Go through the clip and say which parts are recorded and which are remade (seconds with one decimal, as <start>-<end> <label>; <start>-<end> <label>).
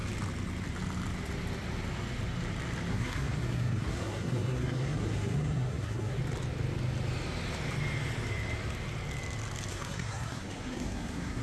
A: 0.0-2.9 recorded; 2.9-6.2 remade; 6.2-9.7 recorded; 9.7-11.4 remade